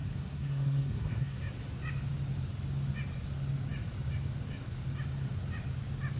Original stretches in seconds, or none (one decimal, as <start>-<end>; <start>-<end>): 1.4-6.2